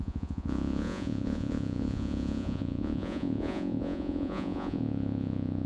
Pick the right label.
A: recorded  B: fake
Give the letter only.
B